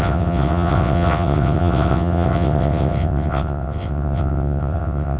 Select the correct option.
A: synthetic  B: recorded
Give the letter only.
A